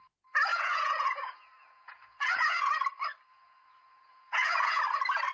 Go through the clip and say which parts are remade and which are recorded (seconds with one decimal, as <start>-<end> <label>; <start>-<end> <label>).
0.0-0.5 recorded; 0.5-2.7 remade; 2.7-3.3 recorded; 3.3-4.8 remade; 4.8-5.3 recorded